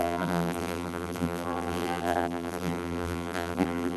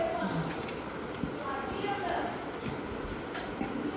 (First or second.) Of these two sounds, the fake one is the first